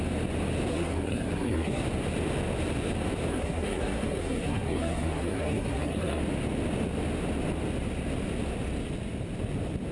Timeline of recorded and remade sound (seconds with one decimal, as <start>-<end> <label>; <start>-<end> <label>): 0.0-0.7 recorded; 0.7-1.8 remade; 1.8-3.3 recorded; 3.3-6.2 remade; 6.2-9.9 recorded